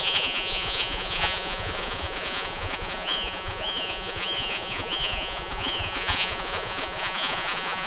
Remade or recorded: remade